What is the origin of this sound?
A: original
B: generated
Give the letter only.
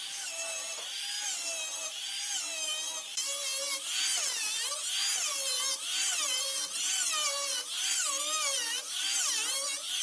A